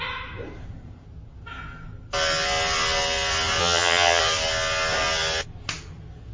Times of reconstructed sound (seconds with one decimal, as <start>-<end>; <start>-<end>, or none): 3.6-4.2